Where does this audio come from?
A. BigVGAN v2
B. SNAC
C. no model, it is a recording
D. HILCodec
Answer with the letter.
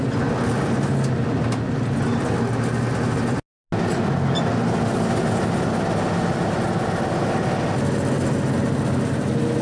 C